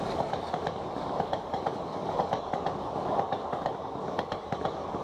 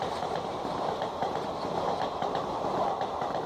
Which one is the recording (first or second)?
second